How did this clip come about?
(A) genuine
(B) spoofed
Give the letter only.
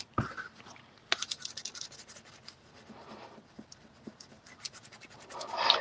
A